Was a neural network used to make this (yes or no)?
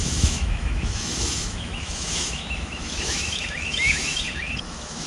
yes